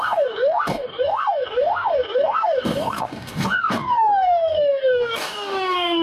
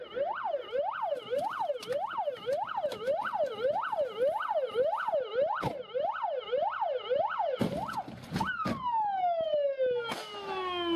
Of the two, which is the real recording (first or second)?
second